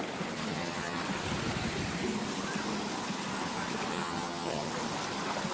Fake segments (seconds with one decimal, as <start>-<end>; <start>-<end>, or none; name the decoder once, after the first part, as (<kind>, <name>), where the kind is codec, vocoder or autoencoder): 0.5-1.0 (vocoder, HiFi-GAN); 3.9-4.7